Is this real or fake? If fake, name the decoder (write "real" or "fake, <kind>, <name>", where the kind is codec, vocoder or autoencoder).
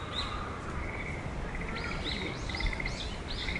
real